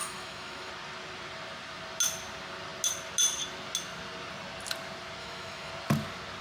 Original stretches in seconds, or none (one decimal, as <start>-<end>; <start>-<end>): 0.7-5.2; 5.7-6.4